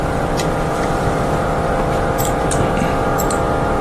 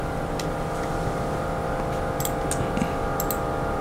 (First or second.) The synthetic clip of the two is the first